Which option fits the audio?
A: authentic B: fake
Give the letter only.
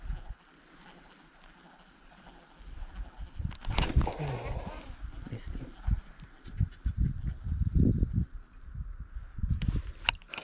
A